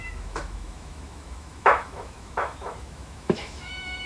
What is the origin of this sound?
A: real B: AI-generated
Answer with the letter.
B